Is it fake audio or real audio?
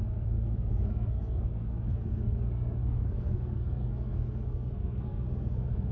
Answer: fake